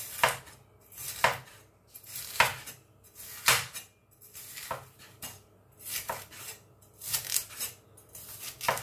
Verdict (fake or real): real